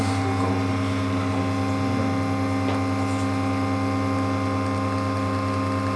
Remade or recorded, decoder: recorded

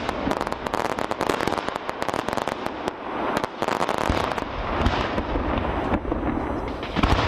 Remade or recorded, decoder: recorded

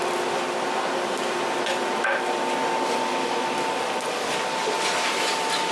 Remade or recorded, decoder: recorded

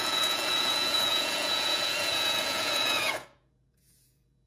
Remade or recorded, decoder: remade, vocoder, Vocos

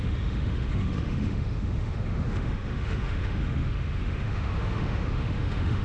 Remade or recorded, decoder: remade, autoencoder, DAC-VAE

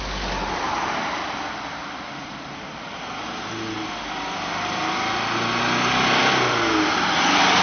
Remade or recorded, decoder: recorded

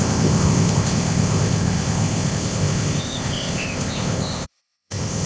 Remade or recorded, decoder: remade, codec, ZipCodec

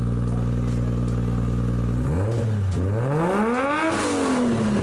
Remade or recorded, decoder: recorded